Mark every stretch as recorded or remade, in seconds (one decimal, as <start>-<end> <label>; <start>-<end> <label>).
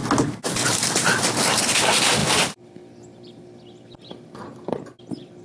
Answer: 0.0-2.2 recorded; 2.2-5.4 remade